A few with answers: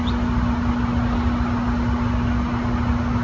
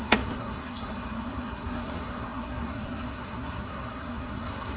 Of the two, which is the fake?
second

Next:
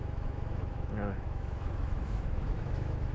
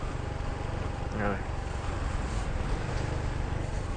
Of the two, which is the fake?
first